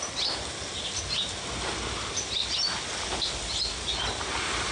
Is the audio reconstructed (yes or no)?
no